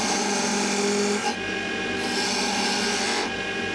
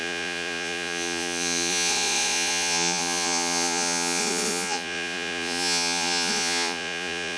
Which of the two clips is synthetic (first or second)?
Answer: second